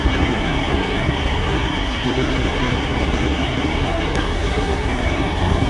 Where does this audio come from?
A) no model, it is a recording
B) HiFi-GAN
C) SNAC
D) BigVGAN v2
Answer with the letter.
C